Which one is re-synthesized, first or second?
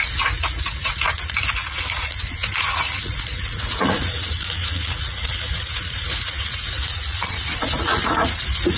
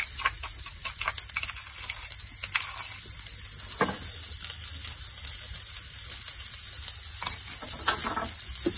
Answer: first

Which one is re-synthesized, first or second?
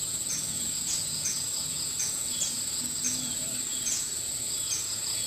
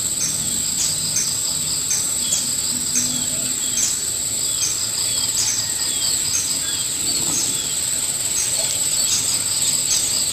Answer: first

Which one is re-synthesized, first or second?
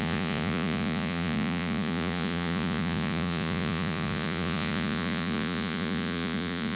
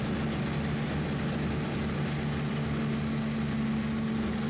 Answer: first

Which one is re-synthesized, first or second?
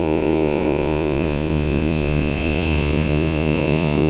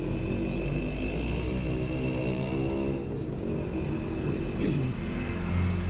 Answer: first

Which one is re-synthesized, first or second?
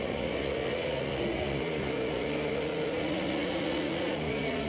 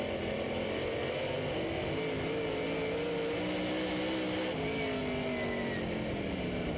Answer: first